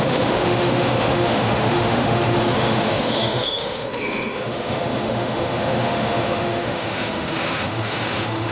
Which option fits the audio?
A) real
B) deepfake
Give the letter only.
B